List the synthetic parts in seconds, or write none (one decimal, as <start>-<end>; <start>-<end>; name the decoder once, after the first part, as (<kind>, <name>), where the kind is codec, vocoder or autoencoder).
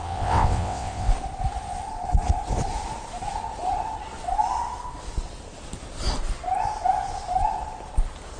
0.0-1.1 (vocoder, WaveNeXt)